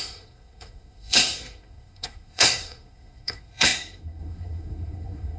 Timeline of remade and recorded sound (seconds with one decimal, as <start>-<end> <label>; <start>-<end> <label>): 0.0-5.4 remade